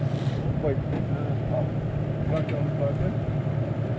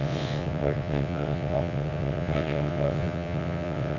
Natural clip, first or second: first